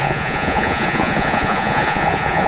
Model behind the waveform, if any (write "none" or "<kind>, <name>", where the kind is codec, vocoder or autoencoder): vocoder, Vocos